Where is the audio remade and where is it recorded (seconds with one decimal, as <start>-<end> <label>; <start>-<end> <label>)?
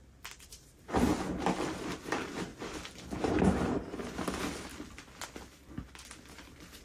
0.0-1.1 remade; 1.1-1.7 recorded; 1.7-2.5 remade; 2.5-3.2 recorded; 3.2-4.7 remade; 4.7-6.2 recorded; 6.2-6.8 remade